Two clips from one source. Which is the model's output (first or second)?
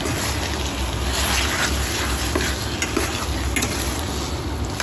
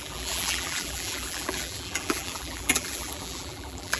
second